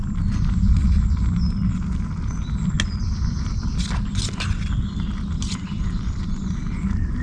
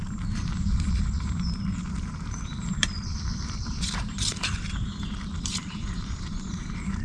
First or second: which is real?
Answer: first